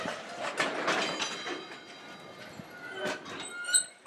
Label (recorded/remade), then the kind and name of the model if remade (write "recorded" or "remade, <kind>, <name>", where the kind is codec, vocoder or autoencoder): recorded